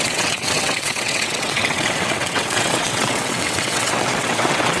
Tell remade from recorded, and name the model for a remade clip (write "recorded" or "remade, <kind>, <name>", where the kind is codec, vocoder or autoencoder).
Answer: remade, vocoder, WaveNeXt